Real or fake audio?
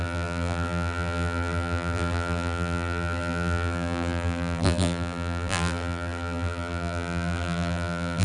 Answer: fake